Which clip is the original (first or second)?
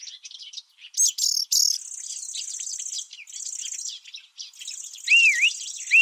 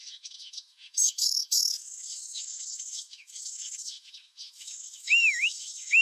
first